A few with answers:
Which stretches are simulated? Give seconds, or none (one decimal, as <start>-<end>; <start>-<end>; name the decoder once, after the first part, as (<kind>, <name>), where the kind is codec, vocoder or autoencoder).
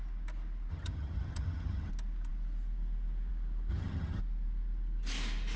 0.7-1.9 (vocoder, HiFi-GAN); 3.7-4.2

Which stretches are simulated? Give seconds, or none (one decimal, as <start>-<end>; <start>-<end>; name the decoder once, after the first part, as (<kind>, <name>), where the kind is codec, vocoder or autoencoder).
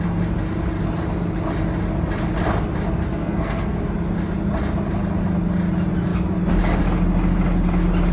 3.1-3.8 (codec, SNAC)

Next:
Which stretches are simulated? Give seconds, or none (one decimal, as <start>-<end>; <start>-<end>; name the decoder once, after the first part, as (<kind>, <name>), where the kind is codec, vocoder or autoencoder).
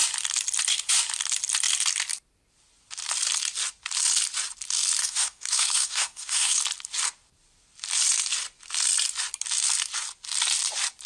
5.0-6.6 (codec, SNAC)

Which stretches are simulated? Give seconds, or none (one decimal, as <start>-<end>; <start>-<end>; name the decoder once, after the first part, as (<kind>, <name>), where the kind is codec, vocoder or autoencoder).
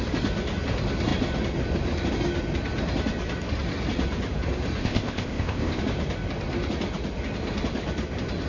4.8-5.8 (codec, ZipCodec)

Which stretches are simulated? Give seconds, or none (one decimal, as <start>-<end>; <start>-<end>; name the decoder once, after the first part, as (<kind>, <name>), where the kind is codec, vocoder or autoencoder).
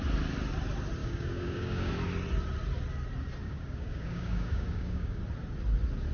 1.0-1.9 (codec, DAC); 3.4-5.2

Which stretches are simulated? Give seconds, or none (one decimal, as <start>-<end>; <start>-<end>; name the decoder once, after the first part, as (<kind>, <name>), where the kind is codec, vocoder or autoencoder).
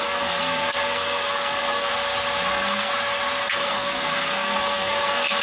0.0-1.9 (codec, SNAC); 2.5-2.9; 3.4-5.4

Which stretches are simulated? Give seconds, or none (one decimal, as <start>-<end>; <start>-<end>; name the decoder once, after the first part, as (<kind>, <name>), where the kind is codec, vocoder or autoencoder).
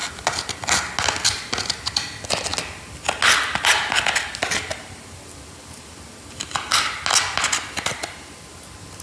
none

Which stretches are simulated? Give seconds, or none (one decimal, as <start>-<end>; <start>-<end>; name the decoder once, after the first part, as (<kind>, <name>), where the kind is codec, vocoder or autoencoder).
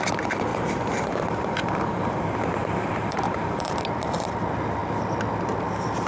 0.5-3.8 (vocoder, BigVGAN v2)